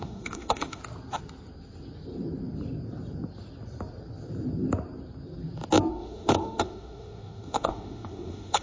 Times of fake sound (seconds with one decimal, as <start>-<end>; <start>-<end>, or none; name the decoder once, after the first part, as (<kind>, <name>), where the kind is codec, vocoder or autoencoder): 0.0-0.8 (autoencoder, DAC-VAE); 5.9-8.6